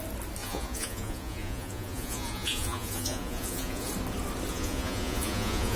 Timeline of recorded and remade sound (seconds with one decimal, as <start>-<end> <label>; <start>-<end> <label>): 0.0-0.4 recorded; 0.4-3.9 remade; 3.9-4.5 recorded; 4.5-5.8 remade